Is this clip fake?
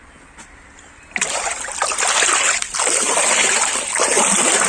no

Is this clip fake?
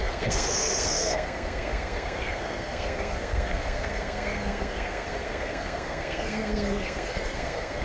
yes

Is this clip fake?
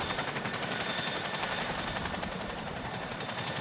yes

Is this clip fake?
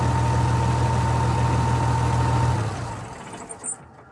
no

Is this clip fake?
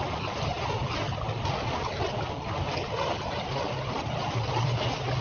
no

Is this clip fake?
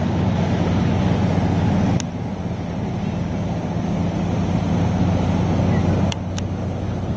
no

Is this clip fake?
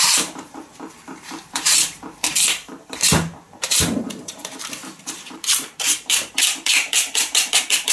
yes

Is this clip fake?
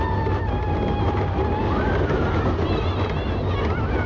no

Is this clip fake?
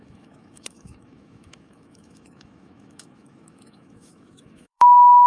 yes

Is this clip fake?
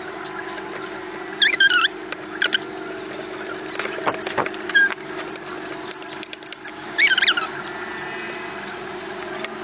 no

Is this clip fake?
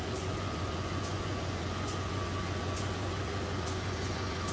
yes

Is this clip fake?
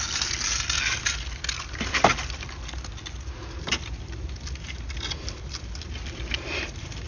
no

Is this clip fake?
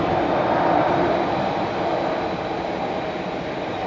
no